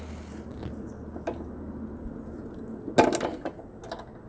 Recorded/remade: recorded